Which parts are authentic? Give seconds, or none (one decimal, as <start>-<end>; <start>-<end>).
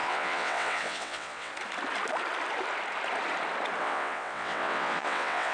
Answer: 1.5-3.8